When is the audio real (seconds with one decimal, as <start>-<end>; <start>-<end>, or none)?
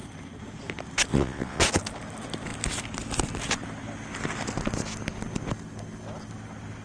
0.0-1.1; 1.6-6.8